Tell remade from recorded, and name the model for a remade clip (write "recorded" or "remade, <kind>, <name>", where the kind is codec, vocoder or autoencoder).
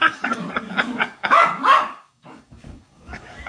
remade, codec, DAC